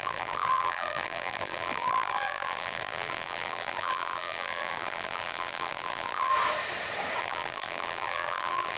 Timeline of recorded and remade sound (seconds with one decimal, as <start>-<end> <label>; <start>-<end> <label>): 0.0-6.3 remade; 6.3-7.2 recorded; 7.2-8.8 remade